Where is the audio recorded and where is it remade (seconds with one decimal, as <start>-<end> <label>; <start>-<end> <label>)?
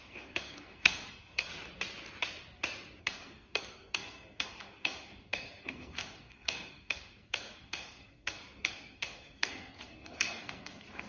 0.0-1.5 remade; 1.5-3.0 recorded; 3.0-11.1 remade